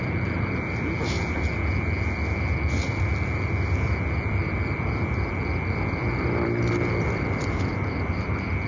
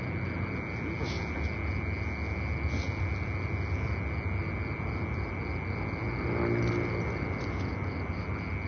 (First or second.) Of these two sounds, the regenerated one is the first